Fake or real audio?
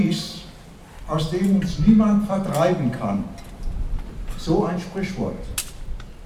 real